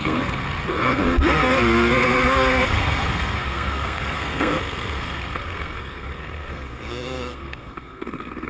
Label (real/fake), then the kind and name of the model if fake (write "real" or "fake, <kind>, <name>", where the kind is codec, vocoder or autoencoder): fake, codec, SNAC